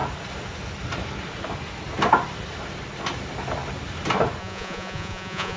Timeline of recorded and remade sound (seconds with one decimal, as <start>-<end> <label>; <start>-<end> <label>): 0.0-4.4 recorded; 4.4-5.6 remade